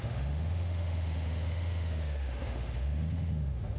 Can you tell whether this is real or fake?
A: fake